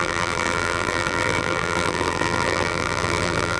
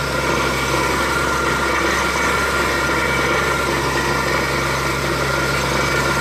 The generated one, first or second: first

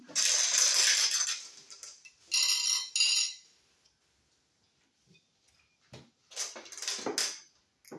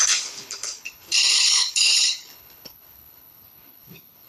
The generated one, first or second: second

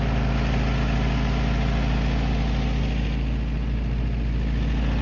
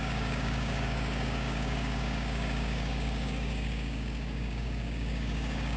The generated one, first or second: second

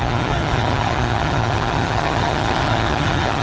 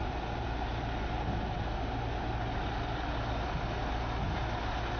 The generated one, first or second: first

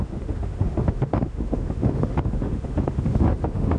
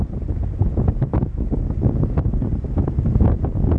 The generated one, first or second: first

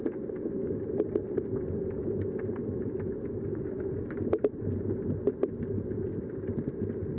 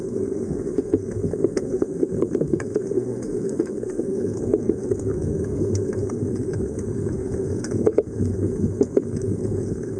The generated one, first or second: second